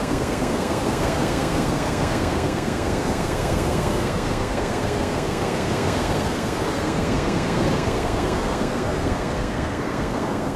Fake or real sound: fake